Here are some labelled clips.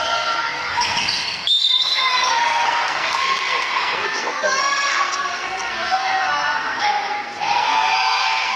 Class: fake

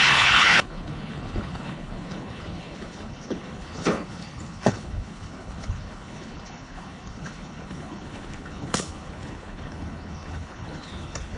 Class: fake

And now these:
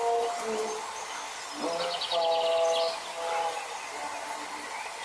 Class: real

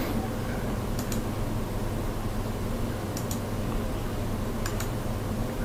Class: real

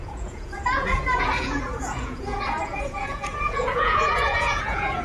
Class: fake